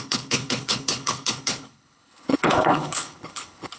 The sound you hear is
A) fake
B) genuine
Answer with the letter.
A